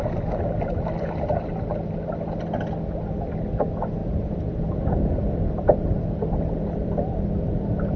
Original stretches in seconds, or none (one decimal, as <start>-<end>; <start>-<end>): 0.0-8.0